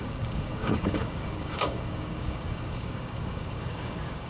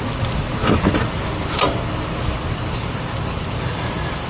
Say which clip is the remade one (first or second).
first